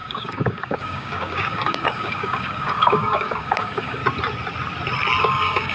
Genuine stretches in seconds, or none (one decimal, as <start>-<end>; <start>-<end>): 4.0-5.2